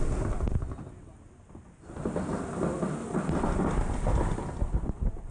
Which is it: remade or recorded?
recorded